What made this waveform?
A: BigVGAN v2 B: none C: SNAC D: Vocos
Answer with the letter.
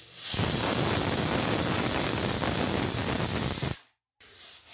A